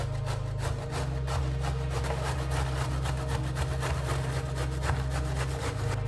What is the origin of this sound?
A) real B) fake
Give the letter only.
A